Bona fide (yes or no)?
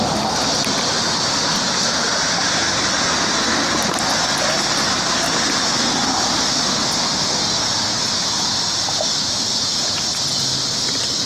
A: yes